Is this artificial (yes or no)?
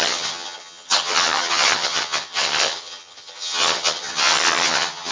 yes